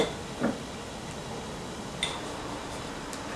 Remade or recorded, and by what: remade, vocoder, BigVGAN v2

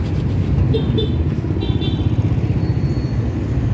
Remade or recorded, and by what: recorded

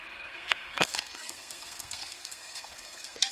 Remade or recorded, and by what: remade, codec, SNAC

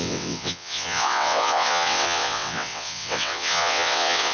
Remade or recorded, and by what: remade, vocoder, WaveNeXt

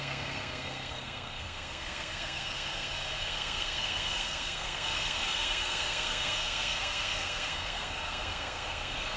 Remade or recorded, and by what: remade, codec, SNAC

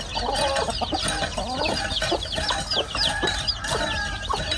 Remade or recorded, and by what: recorded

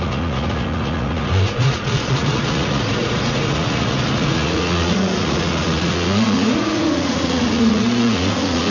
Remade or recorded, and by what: remade, vocoder, Vocos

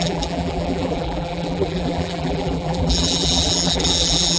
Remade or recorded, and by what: remade, vocoder, BigVGAN v2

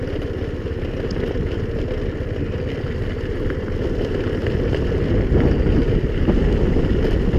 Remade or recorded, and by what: recorded